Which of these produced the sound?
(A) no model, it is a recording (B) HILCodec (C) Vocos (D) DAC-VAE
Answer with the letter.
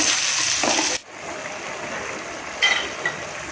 A